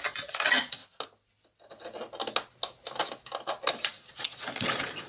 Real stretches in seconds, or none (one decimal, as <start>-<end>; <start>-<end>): 0.8-3.7